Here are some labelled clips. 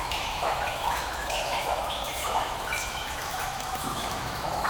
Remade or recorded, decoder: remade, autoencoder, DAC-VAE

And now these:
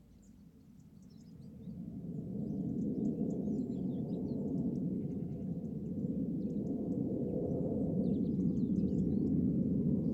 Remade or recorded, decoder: recorded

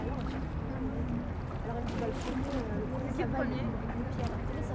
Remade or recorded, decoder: recorded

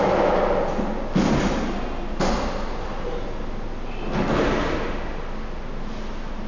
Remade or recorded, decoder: recorded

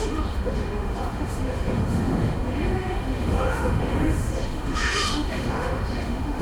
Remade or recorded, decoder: remade, autoencoder, DAC-VAE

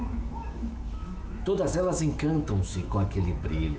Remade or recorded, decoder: remade, autoencoder, DAC-VAE